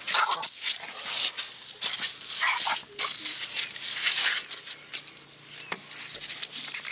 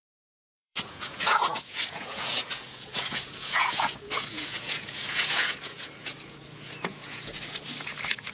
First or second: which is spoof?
second